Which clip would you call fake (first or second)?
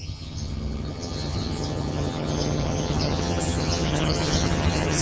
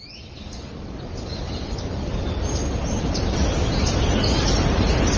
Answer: first